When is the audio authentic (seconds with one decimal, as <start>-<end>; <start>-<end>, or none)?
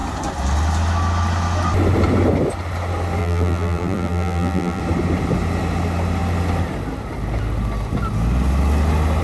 0.0-3.2; 4.8-9.2